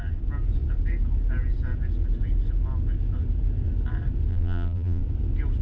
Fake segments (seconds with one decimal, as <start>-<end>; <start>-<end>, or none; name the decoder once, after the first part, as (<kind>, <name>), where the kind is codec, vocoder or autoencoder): 4.3-5.0 (vocoder, BigVGAN v2)